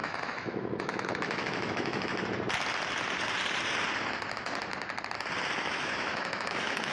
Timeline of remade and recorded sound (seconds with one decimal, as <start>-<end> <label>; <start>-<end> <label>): 0.0-2.1 remade; 2.1-5.6 recorded; 5.6-6.9 remade